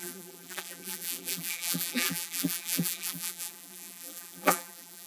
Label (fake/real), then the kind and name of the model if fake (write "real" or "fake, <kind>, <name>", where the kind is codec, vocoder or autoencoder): fake, vocoder, BigVGAN v2